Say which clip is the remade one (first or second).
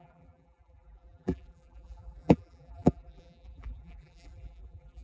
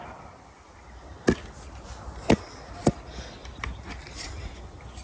first